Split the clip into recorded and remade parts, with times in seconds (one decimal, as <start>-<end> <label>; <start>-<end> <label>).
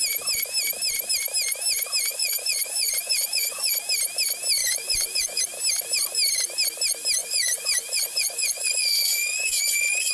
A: 0.0-2.1 recorded; 2.1-3.7 remade; 3.7-4.6 recorded; 4.6-5.4 remade; 5.4-7.2 recorded; 7.2-10.1 remade